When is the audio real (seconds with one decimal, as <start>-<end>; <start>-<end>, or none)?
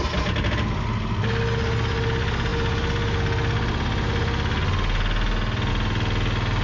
0.0-6.6